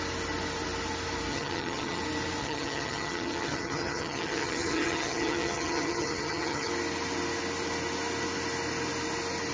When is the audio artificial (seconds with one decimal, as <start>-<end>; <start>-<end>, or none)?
1.3-2.0; 2.4-6.7